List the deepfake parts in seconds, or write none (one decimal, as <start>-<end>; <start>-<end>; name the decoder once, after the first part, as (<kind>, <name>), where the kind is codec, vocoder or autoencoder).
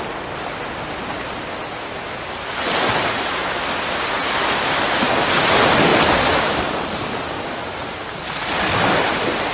none